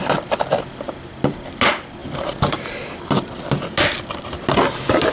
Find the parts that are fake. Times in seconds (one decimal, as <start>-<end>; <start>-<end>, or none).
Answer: none